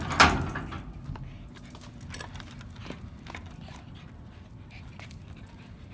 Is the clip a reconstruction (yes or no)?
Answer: no